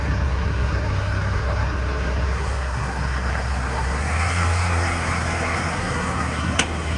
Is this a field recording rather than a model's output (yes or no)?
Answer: no